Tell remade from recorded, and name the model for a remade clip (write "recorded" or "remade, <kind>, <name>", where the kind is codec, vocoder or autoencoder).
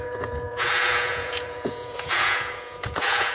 remade, vocoder, Vocos